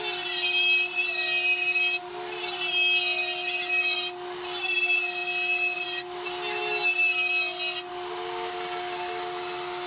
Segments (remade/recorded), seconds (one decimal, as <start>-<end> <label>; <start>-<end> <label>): 0.0-9.9 recorded